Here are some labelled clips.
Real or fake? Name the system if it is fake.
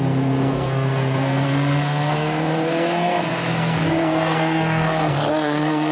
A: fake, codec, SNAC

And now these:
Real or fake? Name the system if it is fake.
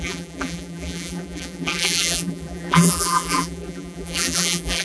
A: fake, vocoder, BigVGAN v2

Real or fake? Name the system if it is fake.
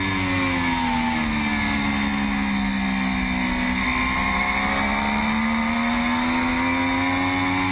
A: real